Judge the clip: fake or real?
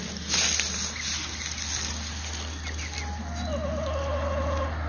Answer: real